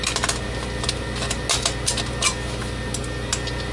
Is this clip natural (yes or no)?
yes